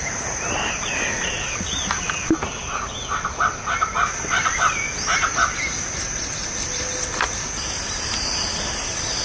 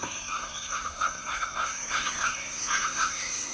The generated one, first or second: second